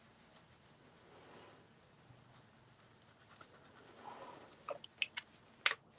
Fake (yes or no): no